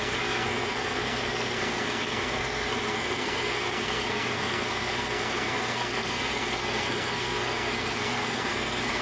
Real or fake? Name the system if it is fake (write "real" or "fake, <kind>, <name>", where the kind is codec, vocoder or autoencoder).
fake, codec, SNAC